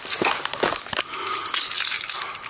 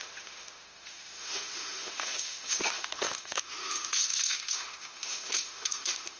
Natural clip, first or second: first